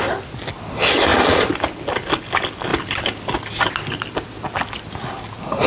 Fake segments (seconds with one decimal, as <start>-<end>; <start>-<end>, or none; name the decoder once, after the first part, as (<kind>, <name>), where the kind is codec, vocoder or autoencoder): 1.1-2.2 (vocoder, BigVGAN v2)